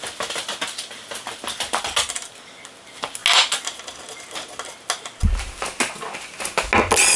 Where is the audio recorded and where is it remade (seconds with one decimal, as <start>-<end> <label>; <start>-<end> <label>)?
0.0-7.2 recorded